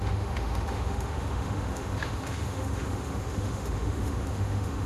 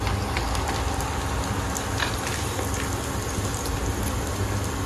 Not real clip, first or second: first